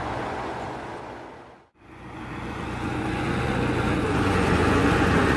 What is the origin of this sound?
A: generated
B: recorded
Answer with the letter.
A